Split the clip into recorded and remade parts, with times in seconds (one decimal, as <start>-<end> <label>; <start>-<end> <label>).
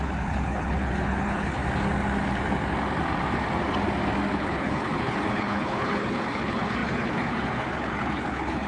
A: 0.0-1.6 remade; 1.6-4.3 recorded; 4.3-8.7 remade